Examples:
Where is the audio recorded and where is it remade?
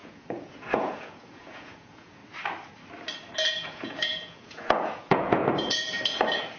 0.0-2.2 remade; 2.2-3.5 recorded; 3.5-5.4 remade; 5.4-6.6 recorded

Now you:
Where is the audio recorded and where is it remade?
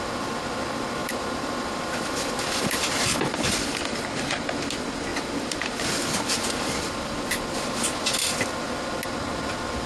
0.0-1.0 recorded; 1.0-4.0 remade; 4.0-5.1 recorded; 5.1-7.1 remade; 7.1-9.9 recorded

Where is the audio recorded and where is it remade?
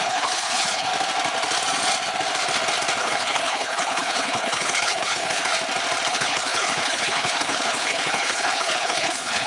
0.0-0.9 remade; 0.9-3.0 recorded; 3.0-5.5 remade; 5.5-6.1 recorded; 6.1-9.5 remade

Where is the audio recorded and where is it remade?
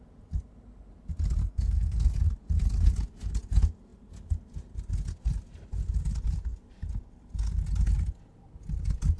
0.0-1.4 recorded; 1.4-2.1 remade; 2.1-9.2 recorded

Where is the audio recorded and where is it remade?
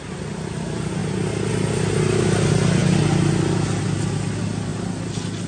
0.0-5.5 recorded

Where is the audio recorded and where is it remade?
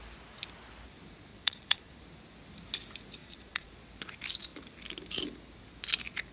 0.0-1.3 recorded; 1.3-2.0 remade; 2.0-3.2 recorded; 3.2-3.7 remade; 3.7-6.3 recorded